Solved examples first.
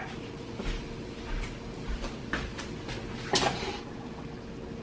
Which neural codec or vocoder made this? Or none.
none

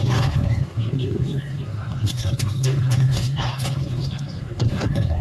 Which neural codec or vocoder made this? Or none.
codec, SNAC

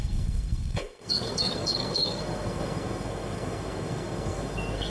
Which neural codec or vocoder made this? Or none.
codec, SNAC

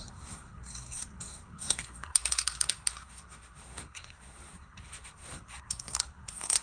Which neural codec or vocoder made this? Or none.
codec, SNAC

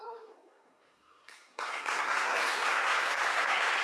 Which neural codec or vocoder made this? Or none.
codec, SNAC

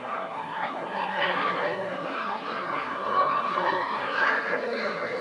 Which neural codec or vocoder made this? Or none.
codec, SNAC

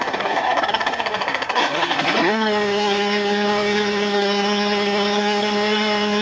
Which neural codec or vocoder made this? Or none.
codec, SNAC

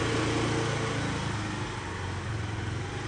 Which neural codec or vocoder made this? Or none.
none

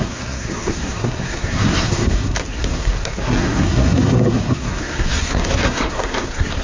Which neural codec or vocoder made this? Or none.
codec, SNAC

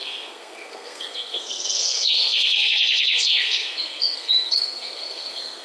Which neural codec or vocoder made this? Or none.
codec, SNAC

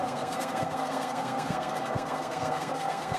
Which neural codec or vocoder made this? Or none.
codec, SNAC